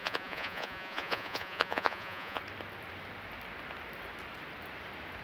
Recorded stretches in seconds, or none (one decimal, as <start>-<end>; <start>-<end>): 2.4-5.2